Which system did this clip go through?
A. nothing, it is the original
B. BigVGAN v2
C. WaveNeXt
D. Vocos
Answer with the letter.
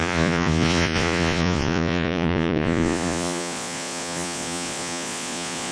D